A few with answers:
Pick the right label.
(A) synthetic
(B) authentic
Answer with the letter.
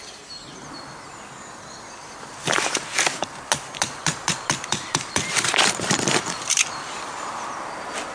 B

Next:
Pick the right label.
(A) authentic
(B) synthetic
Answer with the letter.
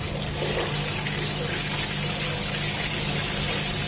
A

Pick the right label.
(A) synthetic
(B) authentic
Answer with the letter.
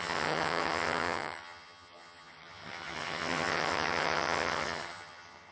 A